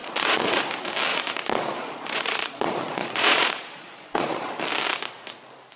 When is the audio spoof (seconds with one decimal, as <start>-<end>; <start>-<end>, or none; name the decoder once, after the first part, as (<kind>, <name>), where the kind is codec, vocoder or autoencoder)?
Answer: 0.0-0.6 (vocoder, Vocos); 1.1-4.6